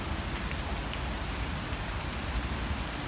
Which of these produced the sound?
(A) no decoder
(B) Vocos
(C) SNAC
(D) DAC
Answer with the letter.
A